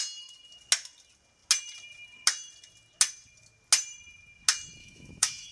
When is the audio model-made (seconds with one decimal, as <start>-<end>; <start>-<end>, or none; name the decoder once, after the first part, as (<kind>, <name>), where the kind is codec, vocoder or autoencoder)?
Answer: 4.8-5.5 (autoencoder, DAC-VAE)